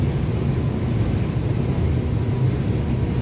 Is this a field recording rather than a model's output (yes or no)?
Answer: yes